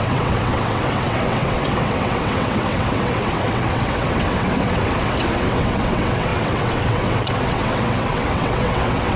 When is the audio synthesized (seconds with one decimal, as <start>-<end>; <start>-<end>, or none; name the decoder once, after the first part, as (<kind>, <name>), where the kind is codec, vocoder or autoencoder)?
0.0-9.2 (vocoder, WaveNeXt)